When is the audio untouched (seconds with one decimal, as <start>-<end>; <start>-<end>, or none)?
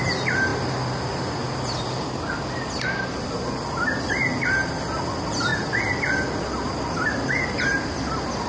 0.0-8.5